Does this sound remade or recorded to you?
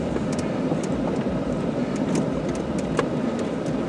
recorded